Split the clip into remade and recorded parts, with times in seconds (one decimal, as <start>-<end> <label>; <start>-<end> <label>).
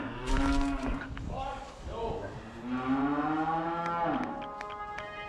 0.0-2.0 remade; 2.0-5.3 recorded